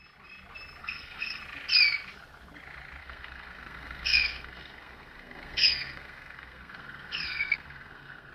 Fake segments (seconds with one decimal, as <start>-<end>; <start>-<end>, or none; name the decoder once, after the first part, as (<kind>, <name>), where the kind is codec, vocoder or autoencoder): 0.8-1.4 (codec, SNAC); 3.0-8.3